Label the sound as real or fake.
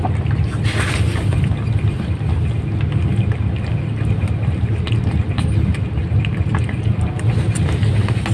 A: real